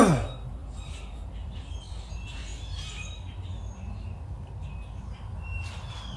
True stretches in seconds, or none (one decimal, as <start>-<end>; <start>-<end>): 0.0-6.2